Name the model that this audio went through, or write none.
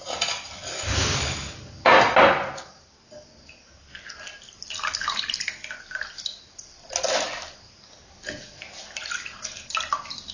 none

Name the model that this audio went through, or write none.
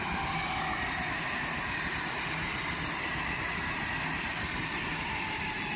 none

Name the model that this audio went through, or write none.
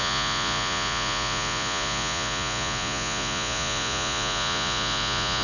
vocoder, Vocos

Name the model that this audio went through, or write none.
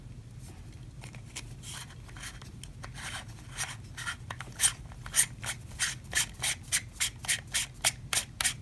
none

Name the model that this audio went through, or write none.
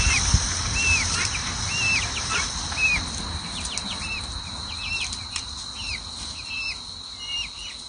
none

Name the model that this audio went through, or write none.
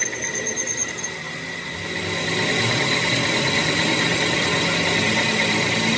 none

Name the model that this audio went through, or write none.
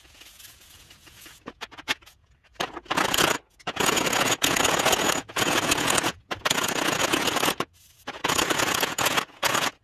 vocoder, Vocos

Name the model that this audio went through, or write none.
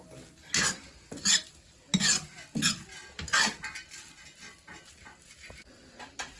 none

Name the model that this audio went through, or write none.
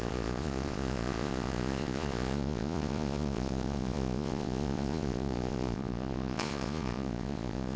vocoder, Vocos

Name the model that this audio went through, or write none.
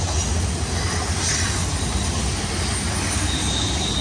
none